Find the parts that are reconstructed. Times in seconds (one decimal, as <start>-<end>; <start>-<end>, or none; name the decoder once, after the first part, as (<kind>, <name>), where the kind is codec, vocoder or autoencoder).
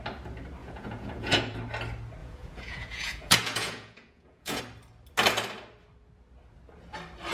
0.6-1.4 (vocoder, Vocos); 2.2-4.6